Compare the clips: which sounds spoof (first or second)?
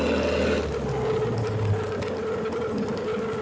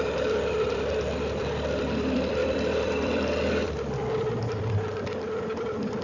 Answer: second